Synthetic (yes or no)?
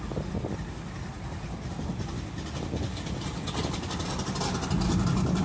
no